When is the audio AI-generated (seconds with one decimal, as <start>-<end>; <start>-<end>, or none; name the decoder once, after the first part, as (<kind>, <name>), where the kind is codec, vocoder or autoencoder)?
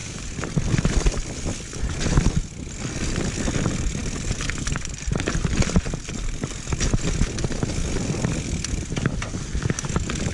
4.0-6.5 (vocoder, BigVGAN v2)